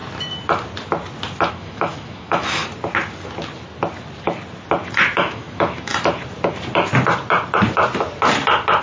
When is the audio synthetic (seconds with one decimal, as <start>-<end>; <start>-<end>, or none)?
1.5-2.6; 5.2-5.9